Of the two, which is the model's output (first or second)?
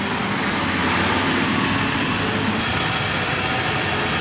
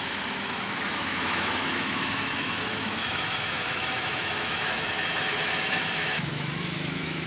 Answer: second